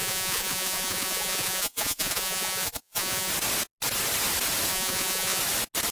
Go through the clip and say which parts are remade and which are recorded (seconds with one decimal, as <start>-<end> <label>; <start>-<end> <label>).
0.0-3.3 remade; 3.3-4.7 recorded; 4.7-5.4 remade; 5.4-5.9 recorded